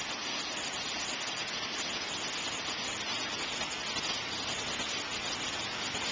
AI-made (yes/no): no